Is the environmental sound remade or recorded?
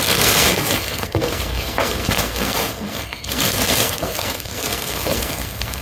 remade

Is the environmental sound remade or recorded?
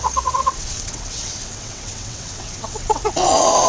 remade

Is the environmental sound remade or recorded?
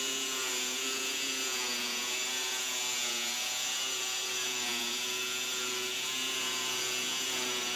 remade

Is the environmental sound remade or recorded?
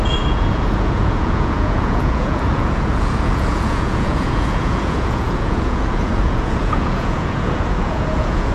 remade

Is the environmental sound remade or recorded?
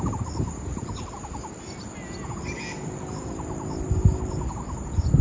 recorded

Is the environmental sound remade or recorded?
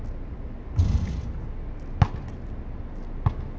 recorded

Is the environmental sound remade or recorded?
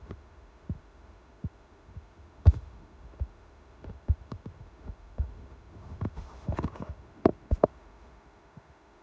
remade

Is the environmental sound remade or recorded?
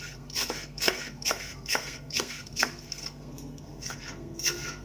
remade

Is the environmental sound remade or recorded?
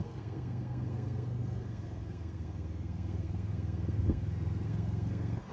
remade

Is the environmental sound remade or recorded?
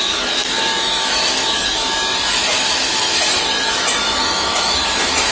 remade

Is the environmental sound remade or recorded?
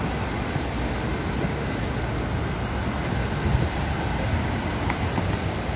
recorded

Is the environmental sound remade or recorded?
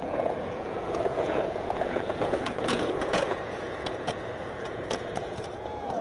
remade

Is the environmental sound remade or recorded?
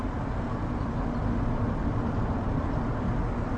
recorded